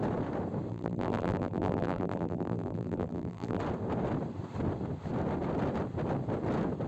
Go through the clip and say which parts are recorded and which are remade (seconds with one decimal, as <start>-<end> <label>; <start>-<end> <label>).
0.0-0.7 recorded; 0.7-3.6 remade; 3.6-6.9 recorded